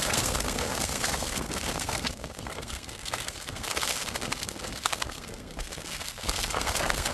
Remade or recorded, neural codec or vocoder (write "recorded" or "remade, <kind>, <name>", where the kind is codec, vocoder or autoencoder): remade, codec, SNAC